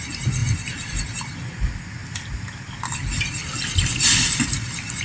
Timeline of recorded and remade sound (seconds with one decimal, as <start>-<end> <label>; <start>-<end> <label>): 0.0-0.4 recorded; 0.4-0.9 remade; 0.9-2.0 recorded; 2.0-4.4 remade; 4.4-5.0 recorded